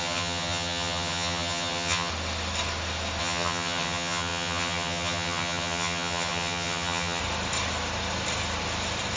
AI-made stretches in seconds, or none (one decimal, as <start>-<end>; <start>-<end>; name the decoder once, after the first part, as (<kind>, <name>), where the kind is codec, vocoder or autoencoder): 0.0-2.1 (vocoder, HiFi-GAN); 3.2-7.2